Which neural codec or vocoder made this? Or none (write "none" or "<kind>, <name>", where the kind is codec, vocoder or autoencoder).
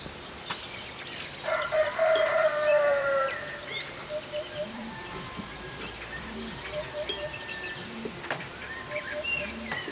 vocoder, BigVGAN v2